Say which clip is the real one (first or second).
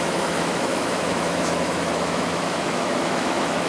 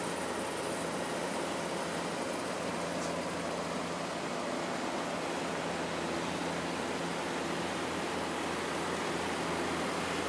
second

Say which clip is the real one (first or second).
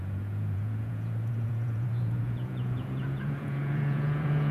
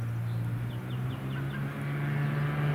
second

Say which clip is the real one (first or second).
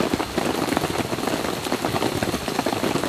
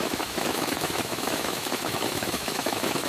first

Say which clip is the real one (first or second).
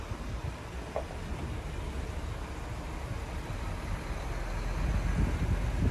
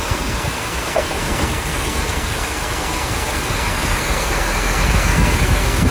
first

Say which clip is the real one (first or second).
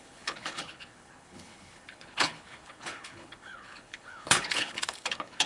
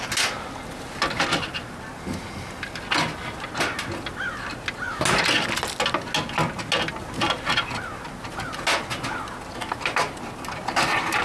second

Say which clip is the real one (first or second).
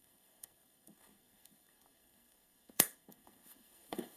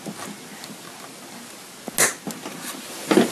second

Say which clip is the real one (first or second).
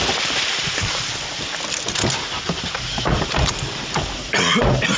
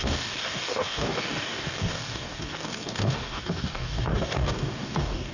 first